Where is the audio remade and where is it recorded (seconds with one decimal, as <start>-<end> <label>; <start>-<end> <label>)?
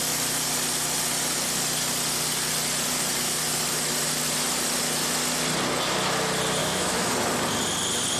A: 0.0-6.6 recorded; 6.6-7.1 remade; 7.1-8.2 recorded